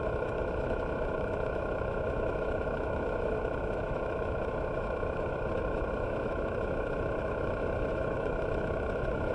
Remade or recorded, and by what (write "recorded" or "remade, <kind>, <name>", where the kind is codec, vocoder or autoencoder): remade, autoencoder, DAC-VAE